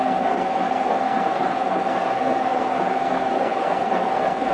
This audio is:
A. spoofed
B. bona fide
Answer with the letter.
A